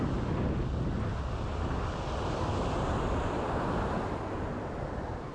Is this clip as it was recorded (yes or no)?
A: yes